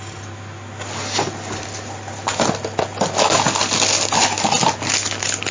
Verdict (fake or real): real